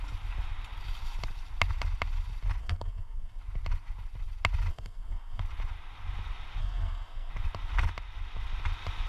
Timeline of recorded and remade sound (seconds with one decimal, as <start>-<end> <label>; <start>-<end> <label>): 0.0-2.6 recorded; 2.6-3.4 remade; 3.4-4.7 recorded; 4.7-5.4 remade; 5.4-6.6 recorded; 6.6-7.3 remade; 7.3-9.1 recorded